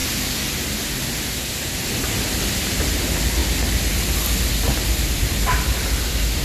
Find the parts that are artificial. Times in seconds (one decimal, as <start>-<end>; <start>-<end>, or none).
2.6-3.4; 5.2-6.4